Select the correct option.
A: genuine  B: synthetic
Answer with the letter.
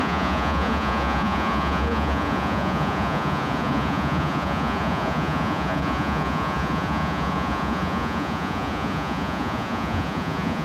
B